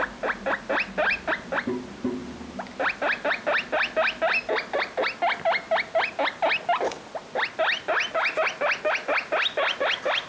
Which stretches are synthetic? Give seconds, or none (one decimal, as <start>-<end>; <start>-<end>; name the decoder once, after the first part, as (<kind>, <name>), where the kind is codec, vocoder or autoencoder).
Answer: none